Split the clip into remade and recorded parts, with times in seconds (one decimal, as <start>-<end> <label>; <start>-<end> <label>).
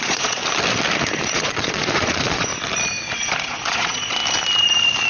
0.0-0.4 remade; 0.4-1.2 recorded; 1.2-2.5 remade; 2.5-3.1 recorded; 3.1-4.2 remade; 4.2-5.1 recorded